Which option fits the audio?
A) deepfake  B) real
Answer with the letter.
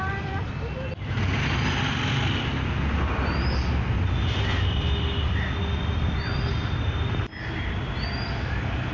B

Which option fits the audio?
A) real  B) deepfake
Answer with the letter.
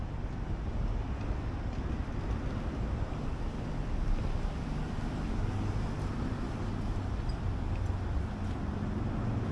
A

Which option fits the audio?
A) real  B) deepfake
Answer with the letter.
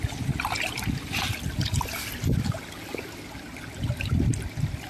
A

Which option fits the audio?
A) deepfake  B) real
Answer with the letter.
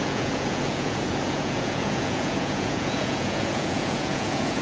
A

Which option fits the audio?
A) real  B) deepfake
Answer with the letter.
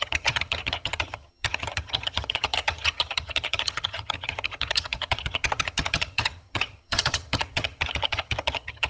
B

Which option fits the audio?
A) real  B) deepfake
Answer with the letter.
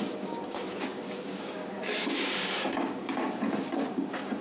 B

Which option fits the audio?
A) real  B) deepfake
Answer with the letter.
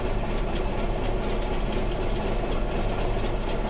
A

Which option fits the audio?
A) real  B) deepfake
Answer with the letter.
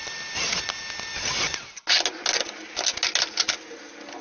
A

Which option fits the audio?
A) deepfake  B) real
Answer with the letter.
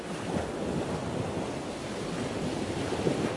B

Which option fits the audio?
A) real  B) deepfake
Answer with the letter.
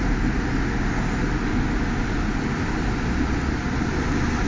A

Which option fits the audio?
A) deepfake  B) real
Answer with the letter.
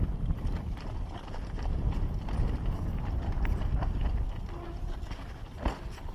B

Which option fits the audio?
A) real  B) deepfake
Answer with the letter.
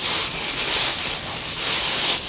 A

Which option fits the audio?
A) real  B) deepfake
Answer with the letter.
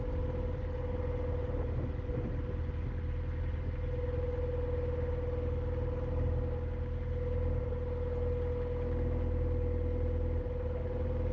A